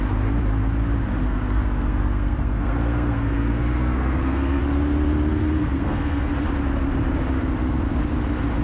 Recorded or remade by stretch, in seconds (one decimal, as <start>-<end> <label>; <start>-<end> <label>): 0.0-1.2 recorded; 1.2-4.6 remade; 4.6-5.4 recorded; 5.4-6.3 remade; 6.3-8.6 recorded

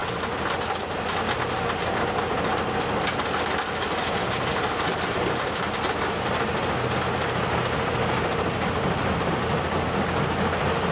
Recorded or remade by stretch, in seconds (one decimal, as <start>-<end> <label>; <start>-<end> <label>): 0.0-10.9 recorded

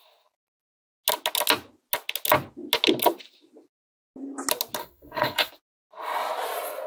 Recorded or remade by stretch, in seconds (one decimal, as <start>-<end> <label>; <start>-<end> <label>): 0.0-4.8 recorded; 4.8-5.5 remade; 5.5-6.9 recorded

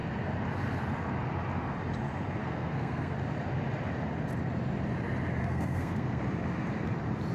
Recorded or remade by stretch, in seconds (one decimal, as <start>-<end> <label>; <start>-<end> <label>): 0.0-2.4 recorded; 2.4-3.1 remade; 3.1-5.4 recorded; 5.4-6.2 remade; 6.2-7.3 recorded

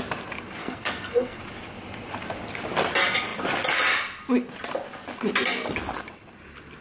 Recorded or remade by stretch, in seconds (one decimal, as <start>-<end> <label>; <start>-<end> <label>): 0.0-0.6 recorded; 0.6-1.4 remade; 1.4-6.8 recorded

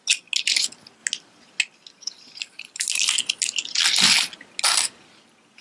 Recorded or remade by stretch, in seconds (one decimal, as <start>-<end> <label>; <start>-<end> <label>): 0.0-5.6 recorded

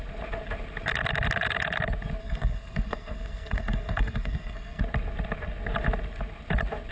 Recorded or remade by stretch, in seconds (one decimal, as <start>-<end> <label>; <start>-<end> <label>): 0.0-2.2 recorded; 2.2-4.8 remade; 4.8-6.9 recorded

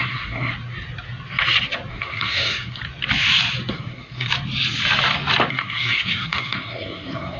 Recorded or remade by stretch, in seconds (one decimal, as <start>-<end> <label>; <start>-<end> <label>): 0.0-0.5 remade; 0.5-1.9 recorded; 1.9-2.8 remade; 2.8-3.7 recorded; 3.7-4.3 remade; 4.3-5.5 recorded; 5.5-7.4 remade